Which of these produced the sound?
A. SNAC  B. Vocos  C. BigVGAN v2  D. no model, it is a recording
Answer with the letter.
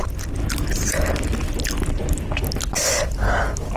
D